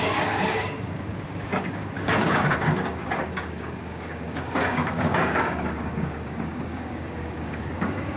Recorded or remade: remade